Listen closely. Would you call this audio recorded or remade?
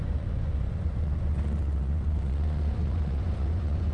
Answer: remade